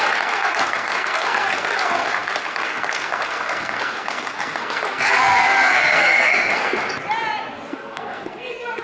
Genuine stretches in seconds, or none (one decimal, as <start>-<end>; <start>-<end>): 6.8-7.5